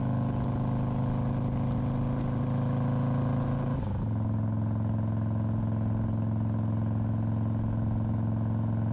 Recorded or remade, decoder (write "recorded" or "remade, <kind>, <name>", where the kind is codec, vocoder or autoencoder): recorded